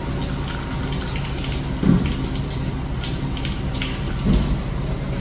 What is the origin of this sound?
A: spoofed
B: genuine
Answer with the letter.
B